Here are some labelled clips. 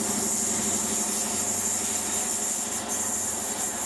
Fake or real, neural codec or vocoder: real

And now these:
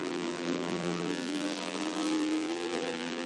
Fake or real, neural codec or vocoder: fake, vocoder, BigVGAN v2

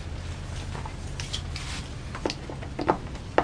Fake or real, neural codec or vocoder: real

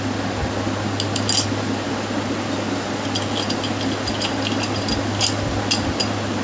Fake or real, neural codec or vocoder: real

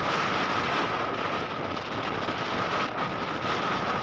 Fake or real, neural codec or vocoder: real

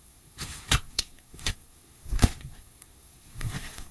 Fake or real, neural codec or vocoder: fake, codec, SNAC